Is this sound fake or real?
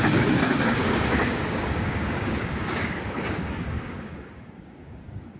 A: fake